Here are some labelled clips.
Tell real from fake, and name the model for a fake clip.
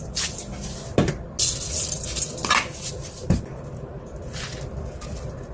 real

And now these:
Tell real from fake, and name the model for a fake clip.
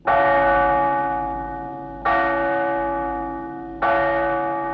real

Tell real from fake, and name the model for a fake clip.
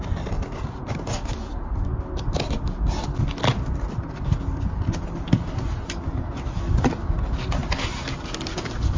real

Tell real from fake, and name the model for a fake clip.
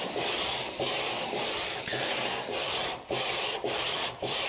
fake, vocoder, BigVGAN v2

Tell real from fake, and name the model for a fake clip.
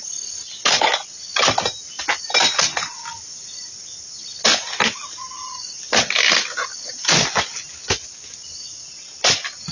real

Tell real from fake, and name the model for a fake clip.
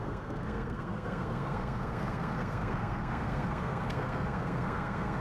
fake, codec, SNAC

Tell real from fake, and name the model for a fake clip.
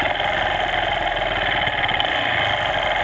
real